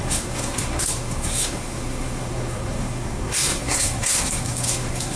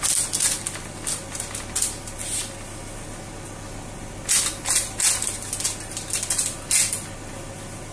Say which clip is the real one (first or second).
second